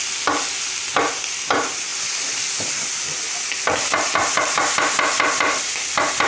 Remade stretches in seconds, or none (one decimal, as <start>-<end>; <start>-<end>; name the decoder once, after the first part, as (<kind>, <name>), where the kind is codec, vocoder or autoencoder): none